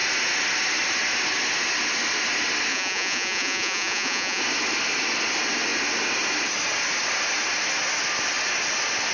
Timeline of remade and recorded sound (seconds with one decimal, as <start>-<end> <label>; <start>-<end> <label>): 0.0-2.7 recorded; 2.7-4.4 remade; 4.4-9.1 recorded